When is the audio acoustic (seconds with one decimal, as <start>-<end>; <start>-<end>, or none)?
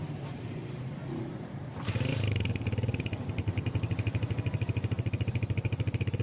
none